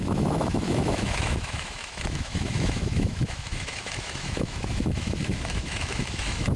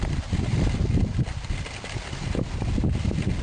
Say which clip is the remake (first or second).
first